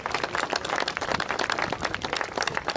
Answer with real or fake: fake